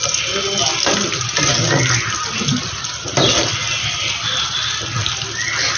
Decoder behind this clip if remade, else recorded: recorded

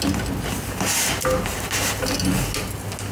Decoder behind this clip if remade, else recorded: recorded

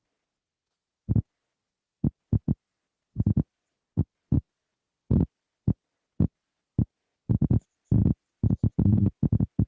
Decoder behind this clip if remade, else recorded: recorded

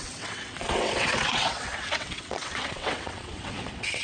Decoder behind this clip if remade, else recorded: remade, vocoder, WaveNeXt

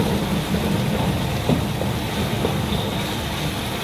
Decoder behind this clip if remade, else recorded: recorded